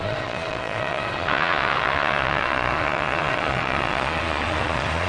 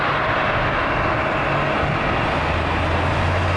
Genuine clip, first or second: second